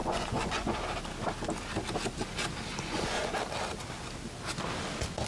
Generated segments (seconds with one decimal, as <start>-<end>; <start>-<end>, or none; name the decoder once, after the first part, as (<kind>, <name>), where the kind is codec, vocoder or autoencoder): 0.0-0.8 (vocoder, Vocos); 2.7-3.3